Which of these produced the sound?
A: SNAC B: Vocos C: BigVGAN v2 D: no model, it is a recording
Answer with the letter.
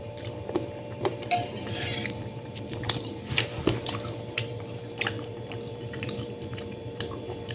C